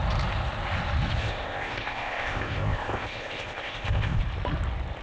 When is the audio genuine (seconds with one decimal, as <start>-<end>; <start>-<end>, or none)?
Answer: 0.0-1.2; 4.2-5.0